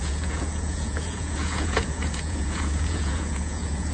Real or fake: fake